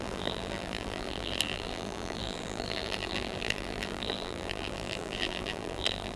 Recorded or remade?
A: remade